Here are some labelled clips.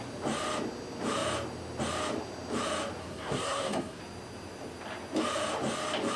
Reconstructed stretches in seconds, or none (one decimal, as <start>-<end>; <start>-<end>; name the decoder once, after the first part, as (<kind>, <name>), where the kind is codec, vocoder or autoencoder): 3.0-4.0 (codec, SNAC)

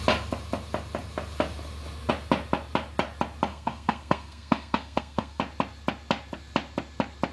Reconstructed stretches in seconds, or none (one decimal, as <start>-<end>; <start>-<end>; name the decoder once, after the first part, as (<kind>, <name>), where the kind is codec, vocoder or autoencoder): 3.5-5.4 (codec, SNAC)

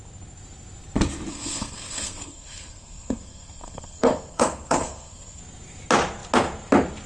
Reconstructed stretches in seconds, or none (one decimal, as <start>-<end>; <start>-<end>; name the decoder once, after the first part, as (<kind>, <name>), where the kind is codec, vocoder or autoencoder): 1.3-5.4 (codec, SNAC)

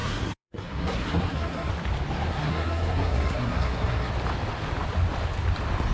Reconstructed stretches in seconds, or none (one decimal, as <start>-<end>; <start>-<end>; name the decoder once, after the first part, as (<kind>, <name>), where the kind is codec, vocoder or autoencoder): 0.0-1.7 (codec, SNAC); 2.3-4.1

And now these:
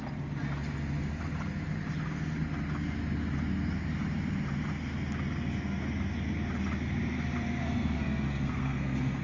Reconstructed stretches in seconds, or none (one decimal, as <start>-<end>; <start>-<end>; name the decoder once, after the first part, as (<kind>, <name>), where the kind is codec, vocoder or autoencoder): 7.6-9.2 (codec, SNAC)

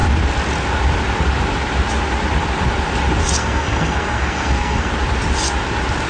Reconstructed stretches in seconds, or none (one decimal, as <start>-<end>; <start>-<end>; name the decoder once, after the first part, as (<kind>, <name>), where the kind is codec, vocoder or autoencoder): 3.4-4.9 (codec, SNAC)